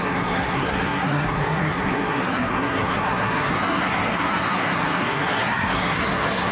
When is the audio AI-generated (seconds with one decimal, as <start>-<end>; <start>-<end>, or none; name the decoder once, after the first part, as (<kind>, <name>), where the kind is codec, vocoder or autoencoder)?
0.0-6.5 (codec, SNAC)